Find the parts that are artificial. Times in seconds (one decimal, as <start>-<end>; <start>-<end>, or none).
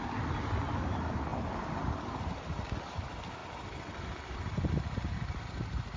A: none